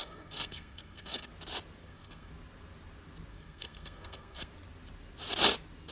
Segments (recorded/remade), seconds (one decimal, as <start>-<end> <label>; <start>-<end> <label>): 0.0-1.3 remade; 1.3-1.8 recorded; 1.8-2.3 remade; 2.3-3.3 recorded; 3.3-4.5 remade; 4.5-5.9 recorded